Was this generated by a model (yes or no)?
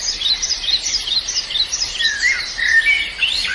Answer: yes